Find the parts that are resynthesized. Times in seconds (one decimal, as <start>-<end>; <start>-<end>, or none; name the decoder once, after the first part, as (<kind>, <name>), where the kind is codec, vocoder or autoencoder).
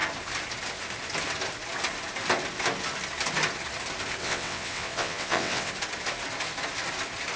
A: 4.2-5.7 (vocoder, WaveNeXt)